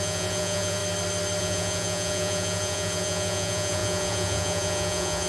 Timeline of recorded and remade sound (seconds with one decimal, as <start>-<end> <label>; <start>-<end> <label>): 0.0-0.8 remade; 0.8-1.4 recorded; 1.4-5.3 remade